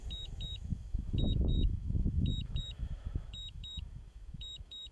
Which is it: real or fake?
fake